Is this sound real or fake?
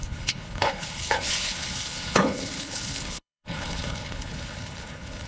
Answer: fake